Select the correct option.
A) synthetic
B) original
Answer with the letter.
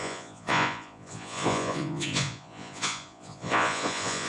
A